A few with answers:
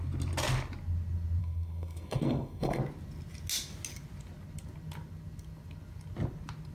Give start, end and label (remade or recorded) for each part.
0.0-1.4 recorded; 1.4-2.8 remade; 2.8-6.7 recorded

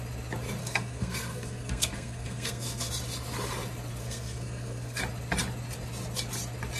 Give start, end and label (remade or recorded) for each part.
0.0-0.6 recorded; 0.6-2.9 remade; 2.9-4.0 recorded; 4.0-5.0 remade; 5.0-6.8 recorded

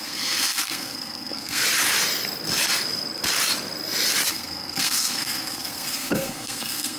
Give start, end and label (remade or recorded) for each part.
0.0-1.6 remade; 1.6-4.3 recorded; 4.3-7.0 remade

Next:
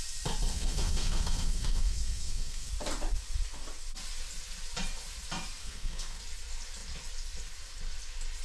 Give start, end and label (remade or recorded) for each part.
0.0-0.5 recorded; 0.5-2.7 remade; 2.7-5.6 recorded; 5.6-6.2 remade; 6.2-8.4 recorded